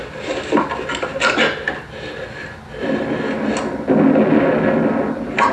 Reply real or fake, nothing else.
real